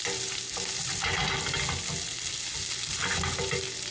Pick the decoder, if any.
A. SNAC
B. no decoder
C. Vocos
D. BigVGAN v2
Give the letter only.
B